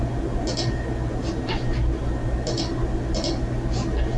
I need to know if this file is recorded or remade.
recorded